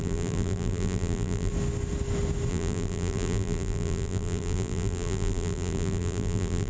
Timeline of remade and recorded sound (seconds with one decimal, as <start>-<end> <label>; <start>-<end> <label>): 0.0-1.5 remade; 1.5-2.5 recorded; 2.5-6.7 remade